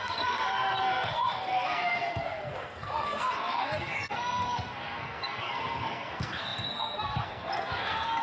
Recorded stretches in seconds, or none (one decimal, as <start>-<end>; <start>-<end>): none